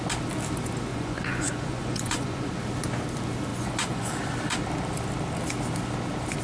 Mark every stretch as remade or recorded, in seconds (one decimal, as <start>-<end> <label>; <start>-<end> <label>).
0.0-0.9 recorded; 0.9-2.5 remade; 2.5-3.5 recorded; 3.5-4.1 remade; 4.1-6.4 recorded